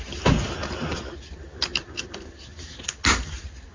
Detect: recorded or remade recorded